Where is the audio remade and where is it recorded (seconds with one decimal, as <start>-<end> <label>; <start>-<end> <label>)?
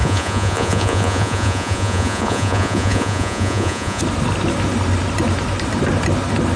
0.0-4.0 remade; 4.0-6.6 recorded